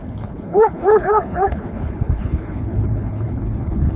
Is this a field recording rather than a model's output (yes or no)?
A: no